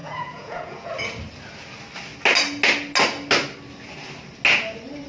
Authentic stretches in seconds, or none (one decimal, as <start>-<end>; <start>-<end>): 0.9-5.1